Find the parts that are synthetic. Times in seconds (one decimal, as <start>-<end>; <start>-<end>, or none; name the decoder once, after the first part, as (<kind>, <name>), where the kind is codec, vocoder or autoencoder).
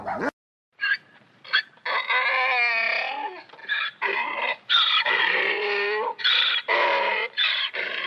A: 0.5-1.4 (vocoder, BigVGAN v2); 3.6-8.1